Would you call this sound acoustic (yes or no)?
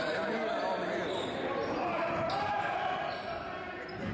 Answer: no